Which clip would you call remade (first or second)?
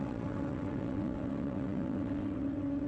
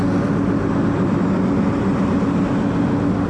first